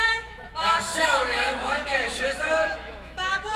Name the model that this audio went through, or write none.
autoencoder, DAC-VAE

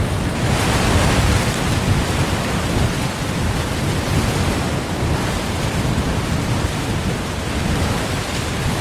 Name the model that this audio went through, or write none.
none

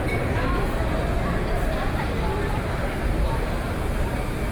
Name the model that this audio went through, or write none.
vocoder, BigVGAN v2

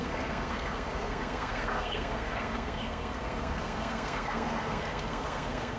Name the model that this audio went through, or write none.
codec, SNAC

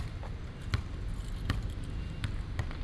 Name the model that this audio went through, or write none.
none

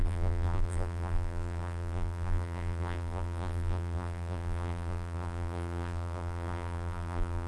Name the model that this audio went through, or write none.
vocoder, BigVGAN v2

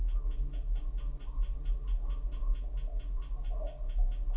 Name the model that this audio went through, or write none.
none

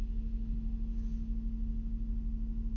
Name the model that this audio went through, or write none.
none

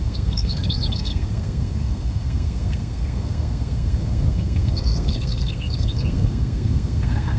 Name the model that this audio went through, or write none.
codec, SNAC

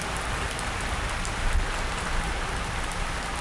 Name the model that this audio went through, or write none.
none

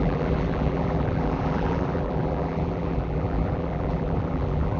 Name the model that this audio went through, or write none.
vocoder, BigVGAN v2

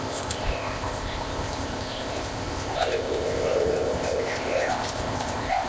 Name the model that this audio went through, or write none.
codec, ZipCodec